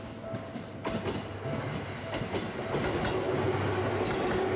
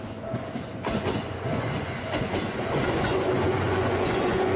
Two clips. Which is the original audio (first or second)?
first